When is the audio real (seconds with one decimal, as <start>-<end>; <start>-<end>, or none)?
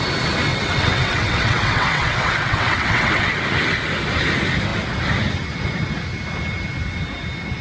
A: 0.0-0.5; 3.3-7.6